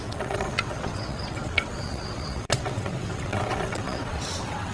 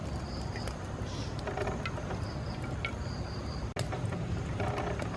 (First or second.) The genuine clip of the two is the second